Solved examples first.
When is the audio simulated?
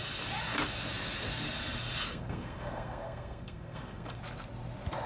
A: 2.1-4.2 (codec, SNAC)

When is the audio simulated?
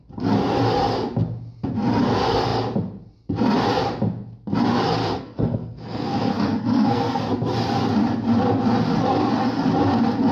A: 5.0-7.2 (codec, SNAC)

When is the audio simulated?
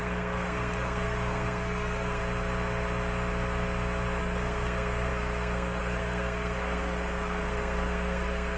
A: 0.0-2.2 (codec, SNAC); 4.2-8.6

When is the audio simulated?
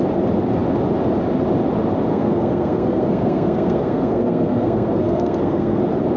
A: 2.1-5.8 (codec, SNAC)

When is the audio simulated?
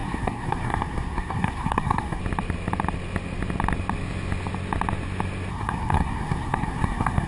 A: 0.0-2.2 (codec, SNAC); 5.5-7.3